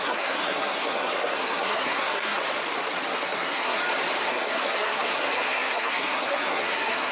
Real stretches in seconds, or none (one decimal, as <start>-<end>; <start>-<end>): 2.4-3.1; 3.8-4.3